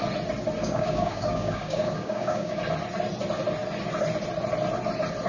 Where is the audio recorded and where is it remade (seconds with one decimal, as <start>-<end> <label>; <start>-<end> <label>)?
0.0-0.6 recorded; 0.6-2.6 remade; 2.6-5.3 recorded